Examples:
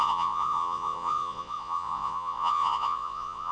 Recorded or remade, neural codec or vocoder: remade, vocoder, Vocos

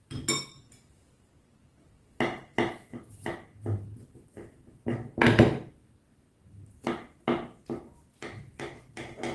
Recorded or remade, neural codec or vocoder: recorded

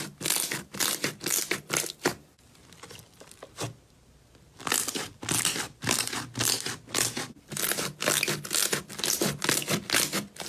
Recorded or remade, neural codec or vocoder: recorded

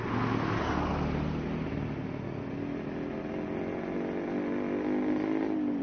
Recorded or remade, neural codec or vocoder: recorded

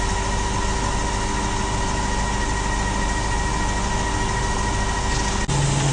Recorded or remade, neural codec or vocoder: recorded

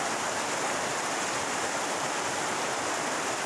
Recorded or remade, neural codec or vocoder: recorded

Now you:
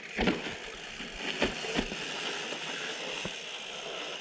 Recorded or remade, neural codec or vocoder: recorded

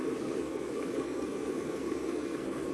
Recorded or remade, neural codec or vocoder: remade, codec, SNAC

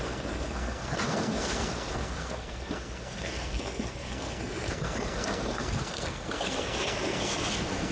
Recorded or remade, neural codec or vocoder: remade, codec, SNAC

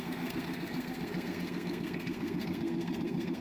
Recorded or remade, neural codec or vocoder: remade, codec, SNAC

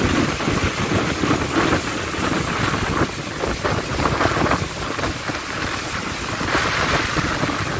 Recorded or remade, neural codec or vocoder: recorded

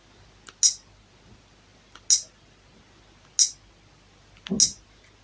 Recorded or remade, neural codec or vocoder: recorded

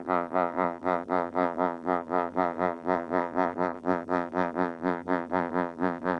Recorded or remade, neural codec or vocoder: remade, vocoder, BigVGAN v2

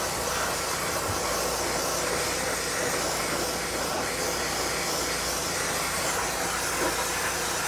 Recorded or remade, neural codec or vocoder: recorded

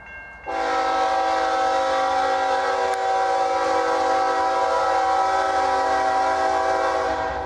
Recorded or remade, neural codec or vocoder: recorded